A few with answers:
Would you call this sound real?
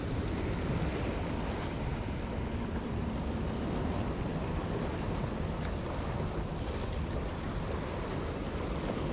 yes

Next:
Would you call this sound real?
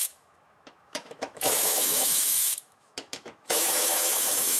no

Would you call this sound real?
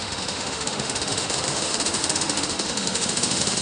no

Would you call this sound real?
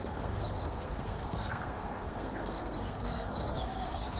no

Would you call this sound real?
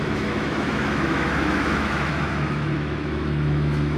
no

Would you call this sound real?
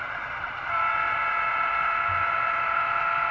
no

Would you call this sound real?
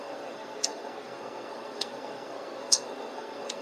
no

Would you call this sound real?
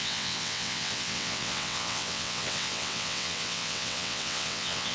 no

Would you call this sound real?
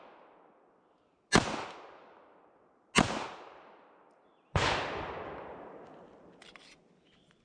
yes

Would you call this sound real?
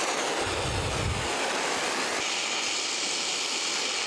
yes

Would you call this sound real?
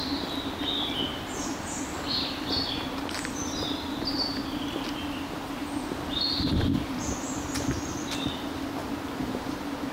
yes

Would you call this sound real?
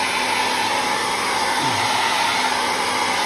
yes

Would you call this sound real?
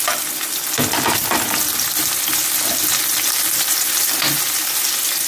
yes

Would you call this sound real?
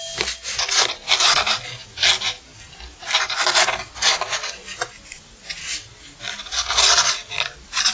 yes